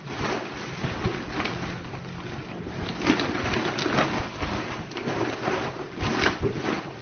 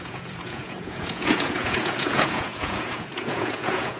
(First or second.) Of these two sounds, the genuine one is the first